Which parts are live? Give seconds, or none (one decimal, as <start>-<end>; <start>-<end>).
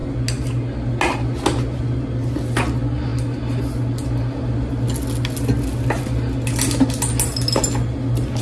0.0-8.4